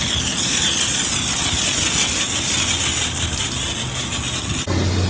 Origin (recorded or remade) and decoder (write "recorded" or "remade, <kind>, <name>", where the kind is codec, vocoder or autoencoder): recorded